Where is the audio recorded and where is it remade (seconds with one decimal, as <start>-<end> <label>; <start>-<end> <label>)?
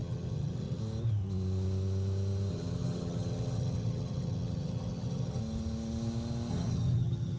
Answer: 0.0-0.8 remade; 0.8-2.5 recorded; 2.5-5.4 remade; 5.4-6.5 recorded; 6.5-7.4 remade